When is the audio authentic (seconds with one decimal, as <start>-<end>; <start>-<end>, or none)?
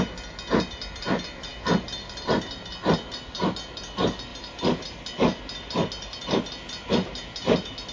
0.0-7.9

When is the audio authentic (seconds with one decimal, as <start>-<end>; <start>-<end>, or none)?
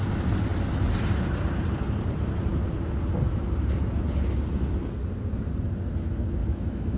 0.0-6.4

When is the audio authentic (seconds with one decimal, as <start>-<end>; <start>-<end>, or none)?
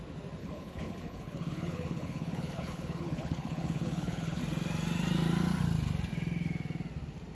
0.0-0.4; 4.4-7.3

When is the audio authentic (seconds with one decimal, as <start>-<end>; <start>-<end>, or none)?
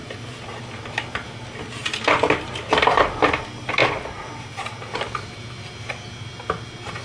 0.0-7.0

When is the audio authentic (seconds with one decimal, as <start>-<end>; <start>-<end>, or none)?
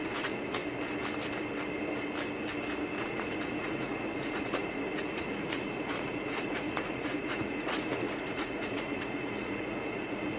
0.6-3.0